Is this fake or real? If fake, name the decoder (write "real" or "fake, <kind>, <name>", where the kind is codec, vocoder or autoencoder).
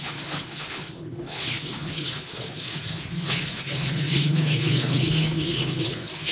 fake, codec, HILCodec